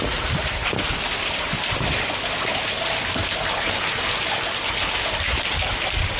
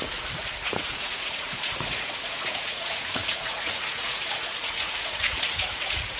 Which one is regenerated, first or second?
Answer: second